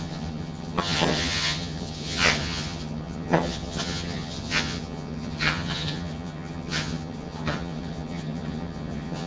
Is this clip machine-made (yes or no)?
yes